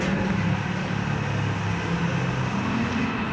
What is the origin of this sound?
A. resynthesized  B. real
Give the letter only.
B